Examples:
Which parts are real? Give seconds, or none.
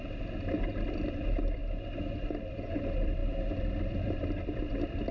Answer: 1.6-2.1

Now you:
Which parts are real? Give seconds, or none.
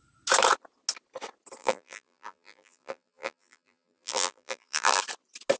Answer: 0.0-1.6; 5.0-5.6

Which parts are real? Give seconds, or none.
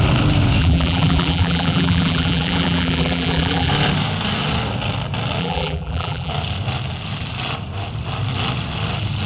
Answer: 0.0-0.6; 3.7-5.4; 6.3-9.3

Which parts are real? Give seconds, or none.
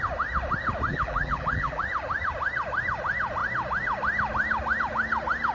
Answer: 0.0-0.9; 1.8-5.5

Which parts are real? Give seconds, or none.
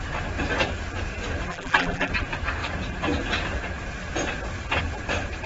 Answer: 0.0-1.5; 2.1-5.5